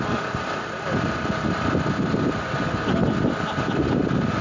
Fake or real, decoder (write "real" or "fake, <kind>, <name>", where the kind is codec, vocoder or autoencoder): real